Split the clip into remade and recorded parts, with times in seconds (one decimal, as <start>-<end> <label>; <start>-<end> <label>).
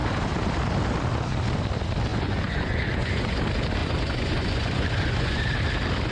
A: 0.0-2.1 recorded; 2.1-3.4 remade; 3.4-3.8 recorded; 3.8-5.4 remade; 5.4-6.1 recorded